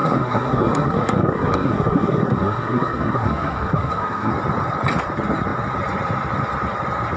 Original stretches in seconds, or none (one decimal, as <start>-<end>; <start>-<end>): 4.3-7.2